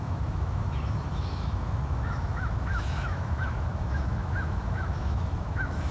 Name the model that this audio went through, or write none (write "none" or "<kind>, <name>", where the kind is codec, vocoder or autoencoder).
autoencoder, DAC-VAE